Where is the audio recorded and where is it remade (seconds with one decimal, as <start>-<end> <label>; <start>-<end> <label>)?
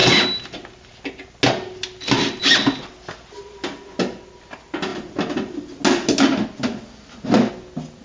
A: 0.0-8.0 recorded